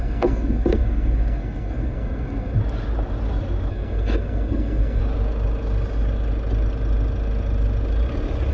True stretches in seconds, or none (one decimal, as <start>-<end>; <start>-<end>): 2.6-3.7; 5.0-8.5